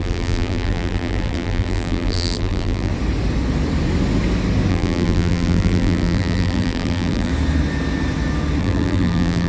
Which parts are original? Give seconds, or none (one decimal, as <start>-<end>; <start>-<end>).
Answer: 2.9-4.7; 7.3-8.6